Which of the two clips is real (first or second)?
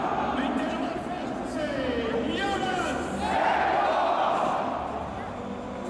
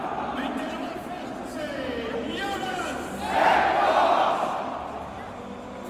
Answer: first